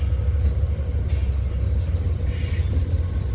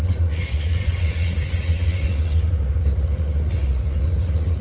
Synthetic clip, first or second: second